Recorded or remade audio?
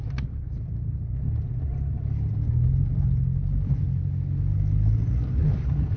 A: recorded